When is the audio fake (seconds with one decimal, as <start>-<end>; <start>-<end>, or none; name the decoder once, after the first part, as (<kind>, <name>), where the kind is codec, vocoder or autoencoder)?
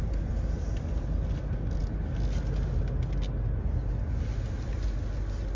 none